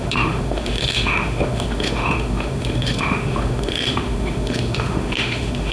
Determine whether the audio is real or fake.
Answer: fake